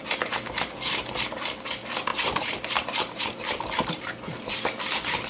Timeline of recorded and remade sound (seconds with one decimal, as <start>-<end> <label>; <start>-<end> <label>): 0.0-2.1 recorded; 2.1-4.5 remade; 4.5-5.3 recorded